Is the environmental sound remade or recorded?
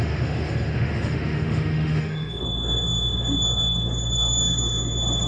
remade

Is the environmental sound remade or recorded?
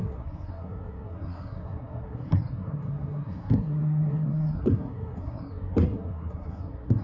remade